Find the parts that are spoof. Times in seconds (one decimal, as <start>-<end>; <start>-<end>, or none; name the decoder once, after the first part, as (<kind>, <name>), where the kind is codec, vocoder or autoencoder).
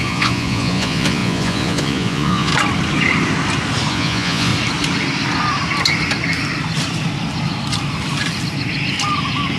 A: 0.0-2.5 (vocoder, Vocos); 3.9-4.5